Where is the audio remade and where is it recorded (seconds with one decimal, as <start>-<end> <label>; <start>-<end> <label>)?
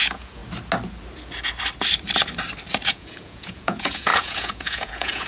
0.0-0.4 remade; 0.4-2.9 recorded; 2.9-5.3 remade